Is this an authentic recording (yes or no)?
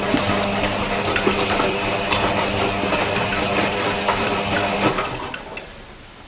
yes